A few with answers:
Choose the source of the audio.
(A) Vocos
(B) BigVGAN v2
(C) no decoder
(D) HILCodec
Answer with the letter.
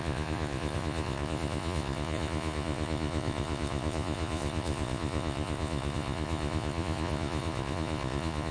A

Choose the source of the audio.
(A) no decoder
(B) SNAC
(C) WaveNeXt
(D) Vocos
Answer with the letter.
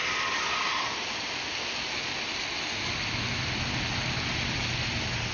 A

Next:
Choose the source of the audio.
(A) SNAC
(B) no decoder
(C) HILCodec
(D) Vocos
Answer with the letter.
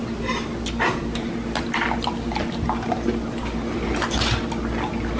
B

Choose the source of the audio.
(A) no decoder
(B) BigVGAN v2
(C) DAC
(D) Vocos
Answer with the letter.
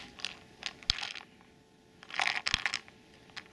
A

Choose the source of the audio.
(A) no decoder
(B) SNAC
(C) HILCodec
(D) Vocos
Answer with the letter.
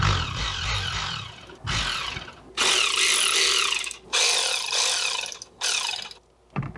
A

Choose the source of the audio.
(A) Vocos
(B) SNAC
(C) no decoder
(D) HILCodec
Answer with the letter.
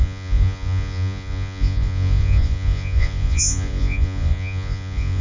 A